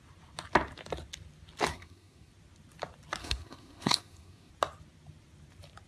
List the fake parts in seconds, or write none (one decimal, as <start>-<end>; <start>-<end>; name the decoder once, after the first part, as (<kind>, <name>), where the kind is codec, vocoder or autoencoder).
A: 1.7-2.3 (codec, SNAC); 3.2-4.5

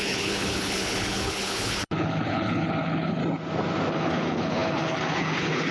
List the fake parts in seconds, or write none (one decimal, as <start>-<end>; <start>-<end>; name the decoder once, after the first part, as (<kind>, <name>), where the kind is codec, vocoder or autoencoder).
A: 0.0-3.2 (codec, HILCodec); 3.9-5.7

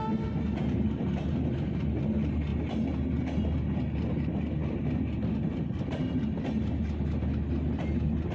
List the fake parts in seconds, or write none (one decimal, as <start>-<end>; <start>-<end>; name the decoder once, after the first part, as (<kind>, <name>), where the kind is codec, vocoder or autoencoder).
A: none

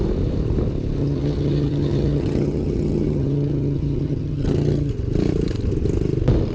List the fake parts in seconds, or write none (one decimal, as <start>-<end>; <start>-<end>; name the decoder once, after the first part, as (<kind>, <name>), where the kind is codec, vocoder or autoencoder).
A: 1.0-4.9 (vocoder, HiFi-GAN)

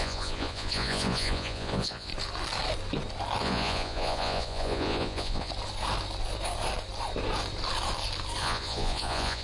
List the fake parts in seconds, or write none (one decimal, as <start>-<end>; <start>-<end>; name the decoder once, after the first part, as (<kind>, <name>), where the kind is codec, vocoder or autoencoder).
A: 0.0-2.1 (vocoder, Vocos); 3.4-5.5; 8.4-9.4

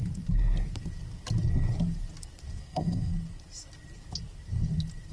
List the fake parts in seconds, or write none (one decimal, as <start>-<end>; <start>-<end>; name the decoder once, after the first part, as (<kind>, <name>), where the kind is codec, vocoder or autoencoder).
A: 2.6-3.1 (codec, SNAC)

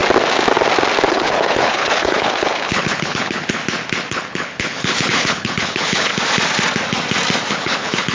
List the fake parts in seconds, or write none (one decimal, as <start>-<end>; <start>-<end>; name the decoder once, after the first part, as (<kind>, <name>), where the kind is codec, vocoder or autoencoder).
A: 1.1-3.6 (codec, HILCodec); 4.1-6.1; 7.5-8.1